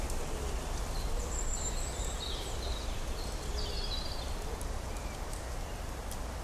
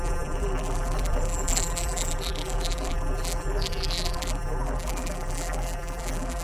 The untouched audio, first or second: first